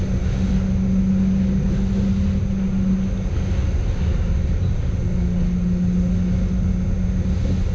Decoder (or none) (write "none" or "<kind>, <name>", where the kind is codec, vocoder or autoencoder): none